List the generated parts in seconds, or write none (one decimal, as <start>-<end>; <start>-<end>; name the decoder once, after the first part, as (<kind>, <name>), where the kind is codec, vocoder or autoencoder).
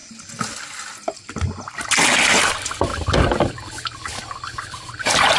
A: none